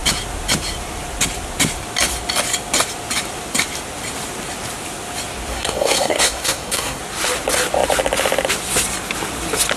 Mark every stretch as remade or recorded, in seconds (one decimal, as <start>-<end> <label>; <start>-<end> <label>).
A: 0.0-5.5 recorded; 5.5-7.0 remade; 7.0-9.8 recorded